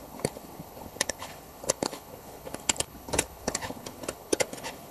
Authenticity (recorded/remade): remade